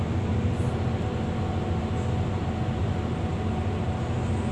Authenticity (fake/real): real